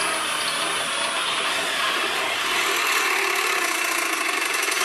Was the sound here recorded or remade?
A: recorded